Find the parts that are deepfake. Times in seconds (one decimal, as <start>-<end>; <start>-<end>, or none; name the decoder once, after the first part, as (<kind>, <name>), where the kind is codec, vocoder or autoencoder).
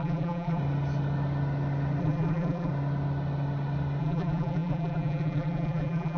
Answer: 0.0-0.6 (vocoder, BigVGAN v2); 2.0-2.7; 4.0-6.2